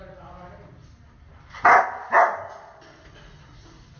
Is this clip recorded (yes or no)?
yes